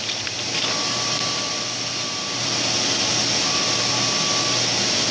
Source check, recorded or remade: recorded